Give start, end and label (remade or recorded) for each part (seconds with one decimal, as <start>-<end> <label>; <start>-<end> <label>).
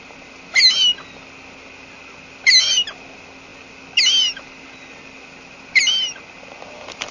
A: 0.0-7.1 recorded